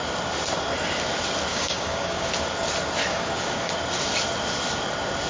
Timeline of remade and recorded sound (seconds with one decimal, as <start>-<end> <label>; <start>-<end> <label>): 0.0-1.5 recorded; 1.5-2.3 remade; 2.3-3.1 recorded; 3.1-3.7 remade; 3.7-5.3 recorded